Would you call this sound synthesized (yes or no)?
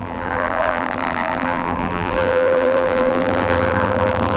yes